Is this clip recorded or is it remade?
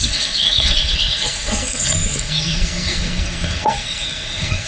remade